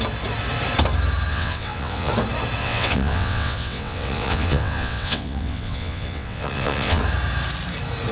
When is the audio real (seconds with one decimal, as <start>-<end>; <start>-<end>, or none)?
0.0-1.3; 2.1-2.6; 7.0-8.1